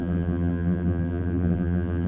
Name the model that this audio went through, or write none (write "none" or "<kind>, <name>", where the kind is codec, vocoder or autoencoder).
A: vocoder, BigVGAN v2